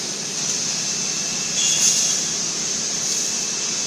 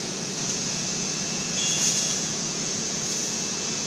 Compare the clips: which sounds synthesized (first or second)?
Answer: second